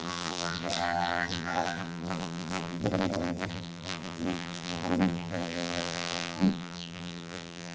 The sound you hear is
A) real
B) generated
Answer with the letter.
B